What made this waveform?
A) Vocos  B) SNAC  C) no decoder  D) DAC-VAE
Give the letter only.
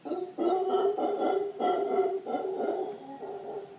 C